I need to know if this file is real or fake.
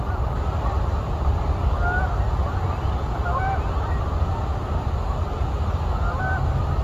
real